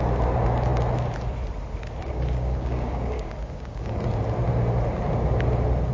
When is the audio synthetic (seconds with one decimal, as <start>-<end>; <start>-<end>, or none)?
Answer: 2.0-4.1